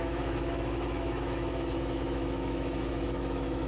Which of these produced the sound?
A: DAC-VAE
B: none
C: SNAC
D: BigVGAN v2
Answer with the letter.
A